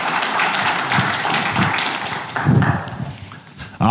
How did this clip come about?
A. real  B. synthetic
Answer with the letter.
B